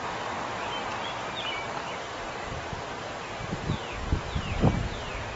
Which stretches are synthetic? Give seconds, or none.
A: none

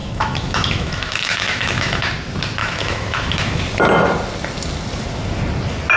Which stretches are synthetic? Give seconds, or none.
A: 0.0-2.1 (autoencoder, DAC-VAE); 2.6-3.6

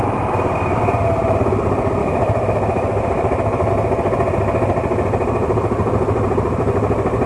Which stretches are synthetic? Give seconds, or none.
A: 2.0-3.7 (autoencoder, DAC-VAE)